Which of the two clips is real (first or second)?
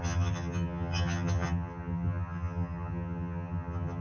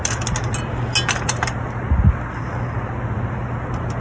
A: second